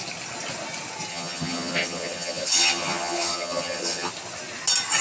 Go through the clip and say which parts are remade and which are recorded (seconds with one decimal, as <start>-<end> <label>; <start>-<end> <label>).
0.0-1.1 recorded; 1.1-4.1 remade; 4.1-5.0 recorded